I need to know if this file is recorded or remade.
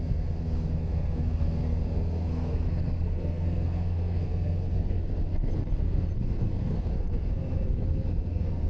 remade